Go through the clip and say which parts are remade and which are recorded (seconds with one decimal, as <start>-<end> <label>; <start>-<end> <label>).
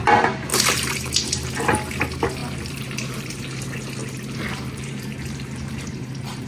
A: 0.0-0.5 recorded; 0.5-1.5 remade; 1.5-2.4 recorded; 2.4-3.6 remade; 3.6-4.0 recorded; 4.0-6.5 remade